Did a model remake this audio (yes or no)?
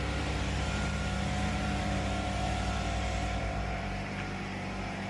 yes